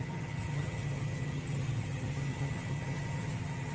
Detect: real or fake fake